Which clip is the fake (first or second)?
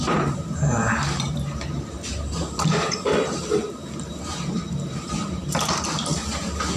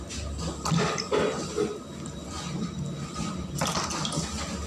first